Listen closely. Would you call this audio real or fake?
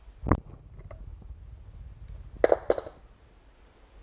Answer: real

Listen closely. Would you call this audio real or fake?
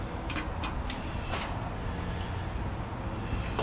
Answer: real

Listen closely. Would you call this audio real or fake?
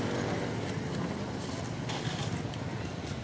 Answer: real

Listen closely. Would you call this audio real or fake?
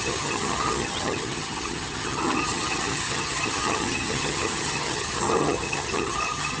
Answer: fake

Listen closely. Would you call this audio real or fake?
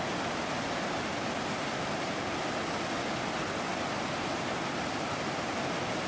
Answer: real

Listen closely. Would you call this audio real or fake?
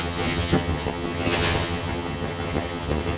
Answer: fake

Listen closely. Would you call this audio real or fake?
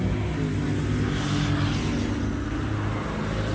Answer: real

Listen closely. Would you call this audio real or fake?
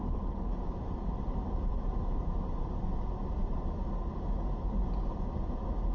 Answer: real